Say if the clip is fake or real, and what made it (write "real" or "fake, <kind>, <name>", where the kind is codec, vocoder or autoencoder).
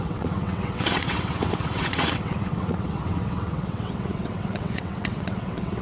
fake, vocoder, WaveNeXt